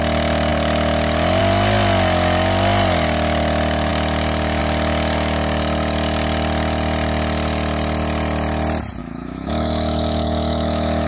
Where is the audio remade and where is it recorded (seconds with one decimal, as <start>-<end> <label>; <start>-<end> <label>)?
0.0-9.0 recorded; 9.0-11.1 remade